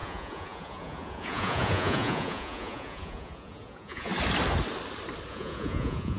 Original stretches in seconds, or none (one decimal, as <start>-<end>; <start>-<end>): 4.1-5.3